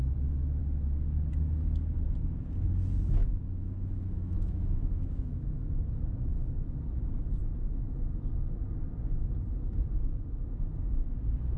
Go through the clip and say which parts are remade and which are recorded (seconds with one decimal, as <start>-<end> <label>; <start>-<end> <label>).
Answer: 0.0-3.2 recorded; 3.2-5.7 remade; 5.7-11.6 recorded